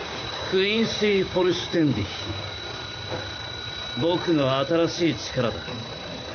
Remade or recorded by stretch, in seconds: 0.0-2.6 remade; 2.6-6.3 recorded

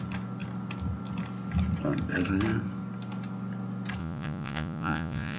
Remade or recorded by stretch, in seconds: 0.0-4.0 recorded; 4.0-5.4 remade

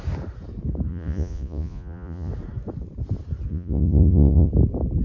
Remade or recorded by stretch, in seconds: 0.0-0.9 recorded; 0.9-2.3 remade; 2.3-3.5 recorded; 3.5-4.5 remade; 4.5-5.0 recorded

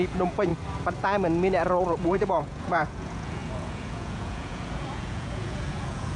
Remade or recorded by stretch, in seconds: 0.0-0.5 remade; 0.5-2.0 recorded; 2.0-6.2 remade

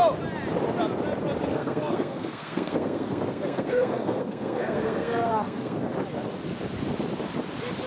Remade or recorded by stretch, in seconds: 0.0-1.5 recorded; 1.5-5.9 remade; 5.9-7.9 recorded